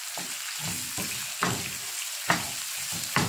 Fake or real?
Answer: real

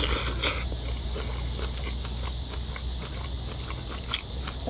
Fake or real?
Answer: real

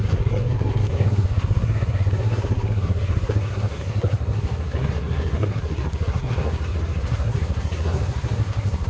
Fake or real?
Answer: fake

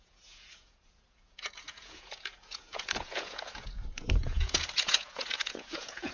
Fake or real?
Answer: fake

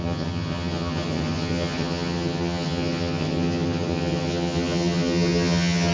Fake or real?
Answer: fake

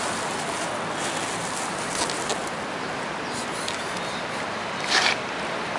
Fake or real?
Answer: real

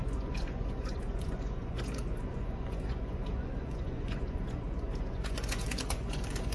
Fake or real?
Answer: fake